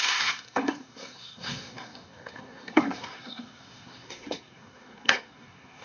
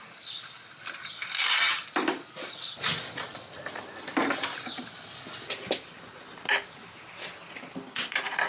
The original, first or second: second